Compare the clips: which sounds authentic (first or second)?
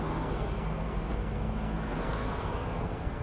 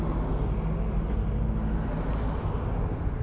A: second